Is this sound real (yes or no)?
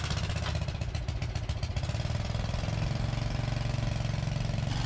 yes